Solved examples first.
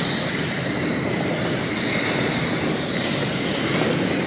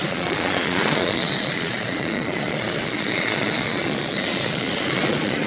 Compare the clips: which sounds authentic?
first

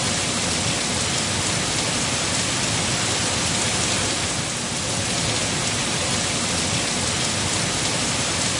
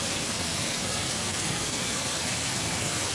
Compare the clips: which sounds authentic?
first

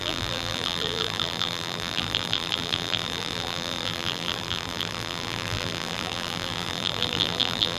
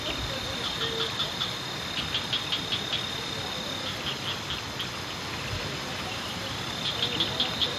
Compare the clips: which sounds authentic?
second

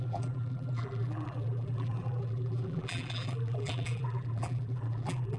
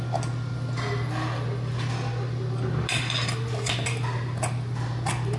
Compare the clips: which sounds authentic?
second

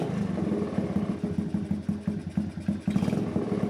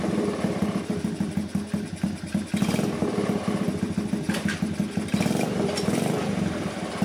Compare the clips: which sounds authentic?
first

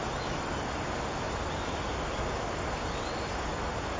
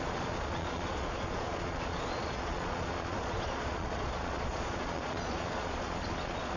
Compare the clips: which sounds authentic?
first